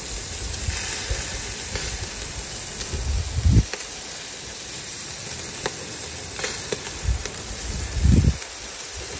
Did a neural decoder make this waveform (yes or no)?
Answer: no